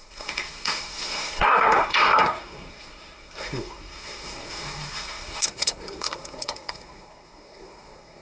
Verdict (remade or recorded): remade